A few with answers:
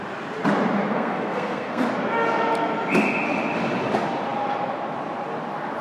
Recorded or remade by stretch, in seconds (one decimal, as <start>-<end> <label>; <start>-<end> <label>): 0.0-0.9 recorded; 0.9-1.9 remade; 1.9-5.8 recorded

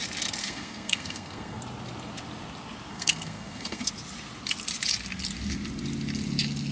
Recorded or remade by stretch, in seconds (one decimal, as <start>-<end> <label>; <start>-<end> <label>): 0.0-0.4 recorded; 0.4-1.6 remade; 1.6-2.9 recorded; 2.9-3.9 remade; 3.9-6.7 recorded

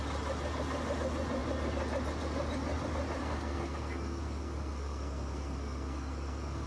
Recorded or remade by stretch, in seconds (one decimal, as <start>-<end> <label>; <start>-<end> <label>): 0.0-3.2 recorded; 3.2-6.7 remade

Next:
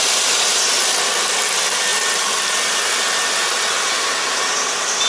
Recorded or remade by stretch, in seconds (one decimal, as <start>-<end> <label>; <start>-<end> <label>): 0.0-5.1 recorded

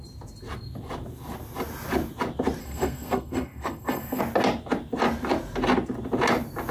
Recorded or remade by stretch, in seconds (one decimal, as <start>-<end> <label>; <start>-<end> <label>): 0.0-2.6 recorded; 2.6-4.2 remade; 4.2-6.7 recorded

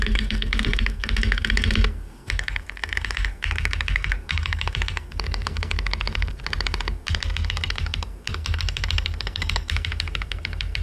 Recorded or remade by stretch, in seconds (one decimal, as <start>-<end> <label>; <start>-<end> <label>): 0.0-10.8 remade